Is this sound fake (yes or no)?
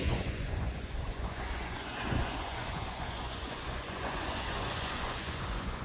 yes